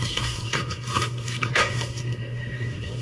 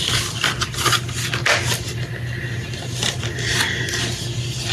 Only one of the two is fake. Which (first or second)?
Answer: first